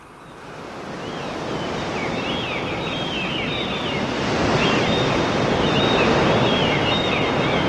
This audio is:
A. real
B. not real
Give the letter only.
A